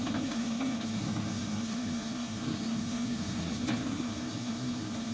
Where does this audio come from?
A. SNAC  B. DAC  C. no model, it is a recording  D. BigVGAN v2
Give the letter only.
A